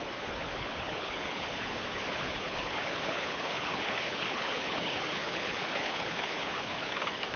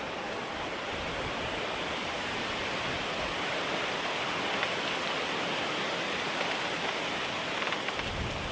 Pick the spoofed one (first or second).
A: first